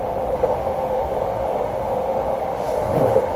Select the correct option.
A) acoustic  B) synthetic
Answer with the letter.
B